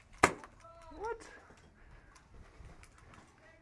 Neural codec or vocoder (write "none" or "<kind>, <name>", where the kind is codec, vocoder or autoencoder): none